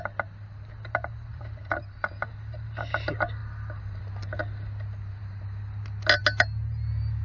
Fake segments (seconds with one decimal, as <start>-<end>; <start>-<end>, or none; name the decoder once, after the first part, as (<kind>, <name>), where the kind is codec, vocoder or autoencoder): 1.3-2.3 (vocoder, BigVGAN v2)